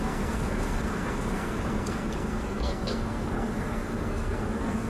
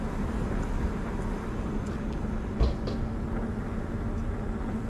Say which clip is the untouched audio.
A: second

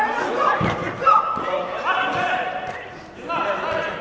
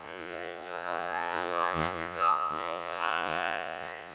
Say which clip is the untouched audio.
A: first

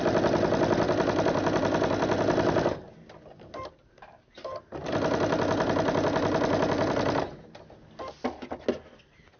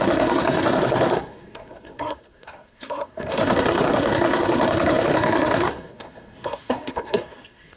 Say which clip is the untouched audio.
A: first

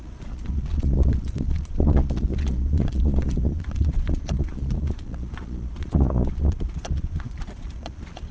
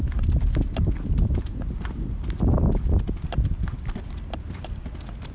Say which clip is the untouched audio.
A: second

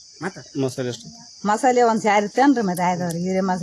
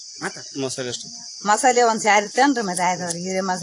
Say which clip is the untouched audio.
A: first